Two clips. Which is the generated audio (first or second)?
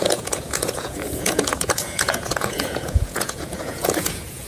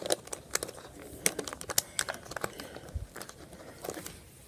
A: first